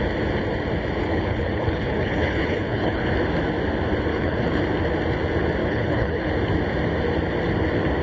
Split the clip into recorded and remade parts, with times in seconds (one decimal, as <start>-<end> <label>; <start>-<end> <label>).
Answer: 0.0-1.0 recorded; 1.0-3.0 remade; 3.0-4.1 recorded; 4.1-4.6 remade; 4.6-5.6 recorded; 5.6-6.3 remade; 6.3-8.0 recorded